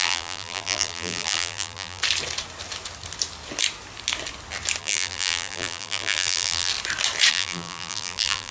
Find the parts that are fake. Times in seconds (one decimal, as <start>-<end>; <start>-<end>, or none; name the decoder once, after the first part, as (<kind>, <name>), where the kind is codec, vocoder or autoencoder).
0.0-2.0 (vocoder, BigVGAN v2); 4.8-6.7; 7.3-8.5